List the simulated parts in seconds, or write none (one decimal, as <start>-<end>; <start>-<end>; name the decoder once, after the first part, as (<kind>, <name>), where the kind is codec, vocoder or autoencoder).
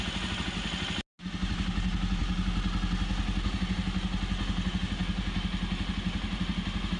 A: none